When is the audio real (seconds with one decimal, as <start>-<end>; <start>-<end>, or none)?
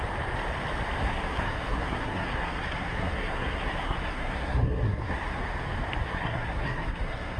0.0-1.0; 5.4-6.0